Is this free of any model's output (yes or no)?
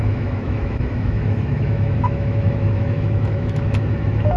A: no